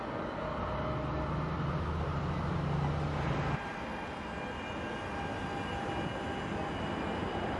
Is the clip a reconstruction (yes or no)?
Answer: no